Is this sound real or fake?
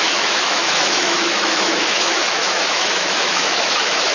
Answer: fake